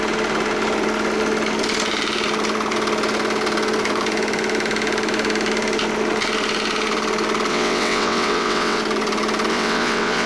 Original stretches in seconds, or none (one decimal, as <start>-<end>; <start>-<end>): 0.0-7.5; 8.8-9.5